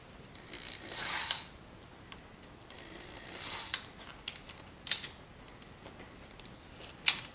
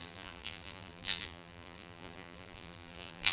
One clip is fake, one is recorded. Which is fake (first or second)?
second